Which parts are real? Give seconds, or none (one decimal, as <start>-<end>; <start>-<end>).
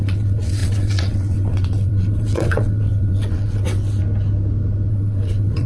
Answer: 4.0-4.9